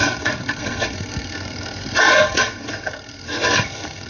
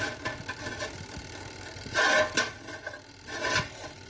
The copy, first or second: first